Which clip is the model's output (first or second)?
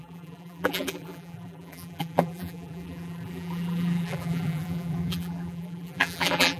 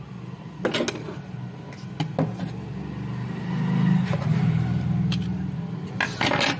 first